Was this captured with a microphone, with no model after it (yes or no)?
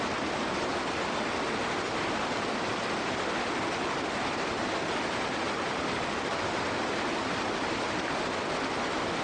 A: yes